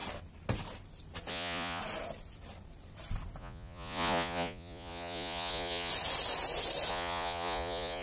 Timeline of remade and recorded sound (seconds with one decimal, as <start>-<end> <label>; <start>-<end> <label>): 0.0-1.3 recorded; 1.3-1.8 remade; 1.8-3.4 recorded; 3.4-5.9 remade; 5.9-6.9 recorded; 6.9-8.0 remade